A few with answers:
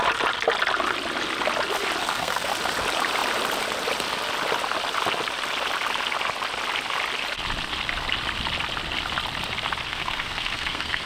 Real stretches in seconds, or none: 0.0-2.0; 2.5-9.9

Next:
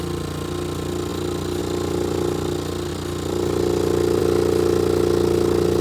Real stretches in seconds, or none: 0.0-5.8

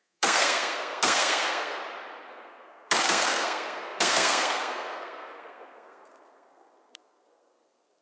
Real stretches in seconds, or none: 1.8-2.3

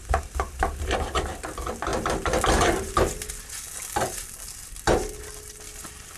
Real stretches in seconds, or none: 0.0-6.2

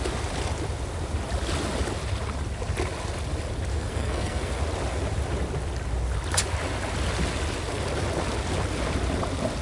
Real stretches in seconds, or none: 0.0-3.7; 4.6-9.6

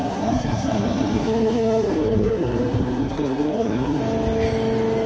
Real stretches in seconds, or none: 4.0-5.1